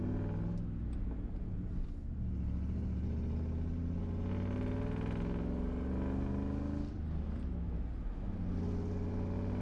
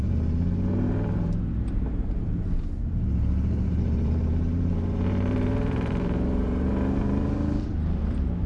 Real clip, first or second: first